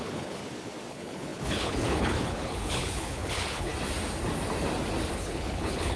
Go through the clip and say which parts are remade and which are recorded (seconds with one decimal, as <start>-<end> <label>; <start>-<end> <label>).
0.0-0.4 remade; 0.4-0.9 recorded; 0.9-3.7 remade; 3.7-5.1 recorded; 5.1-6.0 remade